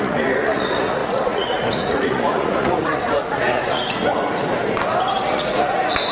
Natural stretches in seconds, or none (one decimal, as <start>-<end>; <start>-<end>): 4.2-5.0